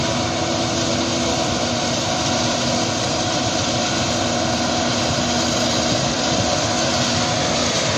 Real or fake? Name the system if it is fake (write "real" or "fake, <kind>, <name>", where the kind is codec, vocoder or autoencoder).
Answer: real